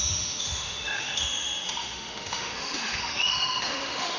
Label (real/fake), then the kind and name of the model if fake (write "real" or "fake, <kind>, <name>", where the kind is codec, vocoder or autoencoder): fake, autoencoder, DAC-VAE